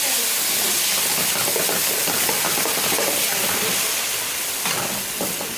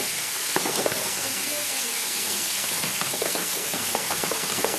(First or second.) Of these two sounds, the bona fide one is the first